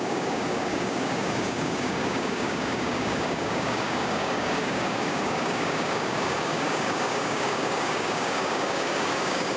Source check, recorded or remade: remade